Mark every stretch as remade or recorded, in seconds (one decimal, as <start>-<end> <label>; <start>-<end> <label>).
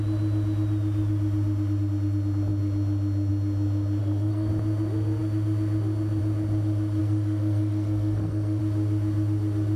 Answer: 0.0-4.0 recorded; 4.0-4.5 remade; 4.5-7.0 recorded; 7.0-8.6 remade; 8.6-9.8 recorded